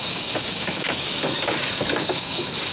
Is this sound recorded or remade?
remade